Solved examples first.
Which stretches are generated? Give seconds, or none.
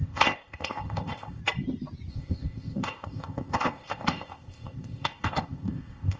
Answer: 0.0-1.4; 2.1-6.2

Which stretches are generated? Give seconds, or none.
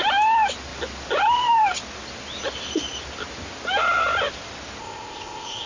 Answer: 4.8-5.7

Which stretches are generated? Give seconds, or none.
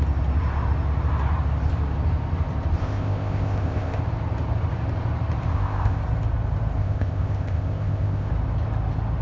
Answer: 2.8-4.0; 5.5-6.0; 6.8-8.3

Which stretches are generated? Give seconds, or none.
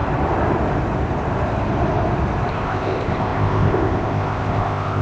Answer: 2.5-5.0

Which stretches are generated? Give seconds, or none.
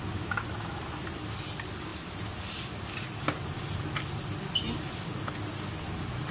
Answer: none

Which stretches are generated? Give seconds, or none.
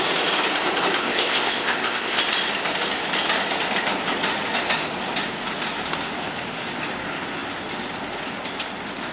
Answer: 1.0-2.2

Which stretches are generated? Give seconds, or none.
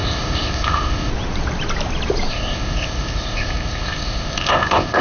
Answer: 0.0-1.1; 2.3-5.0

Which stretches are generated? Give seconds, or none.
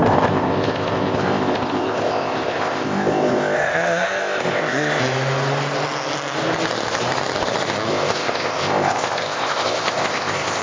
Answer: 0.0-5.0; 7.9-10.6